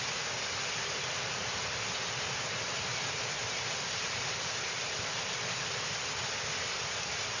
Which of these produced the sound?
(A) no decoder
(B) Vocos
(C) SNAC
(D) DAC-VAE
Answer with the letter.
A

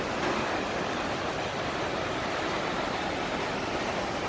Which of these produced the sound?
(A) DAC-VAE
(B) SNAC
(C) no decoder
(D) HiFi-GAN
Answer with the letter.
C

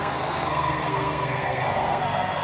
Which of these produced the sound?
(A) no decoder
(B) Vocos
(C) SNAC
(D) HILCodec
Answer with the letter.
C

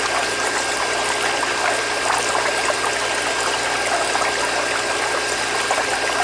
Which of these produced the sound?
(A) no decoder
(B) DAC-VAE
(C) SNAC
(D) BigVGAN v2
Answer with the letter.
A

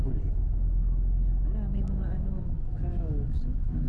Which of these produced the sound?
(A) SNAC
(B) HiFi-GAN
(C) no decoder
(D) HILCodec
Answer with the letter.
C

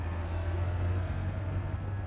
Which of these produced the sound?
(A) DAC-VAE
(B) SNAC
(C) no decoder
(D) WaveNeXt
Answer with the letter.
B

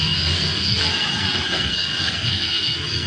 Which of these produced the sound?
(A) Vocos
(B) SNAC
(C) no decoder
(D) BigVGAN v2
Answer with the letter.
B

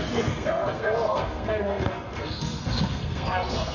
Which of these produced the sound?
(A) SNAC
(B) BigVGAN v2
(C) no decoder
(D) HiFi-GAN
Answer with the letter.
A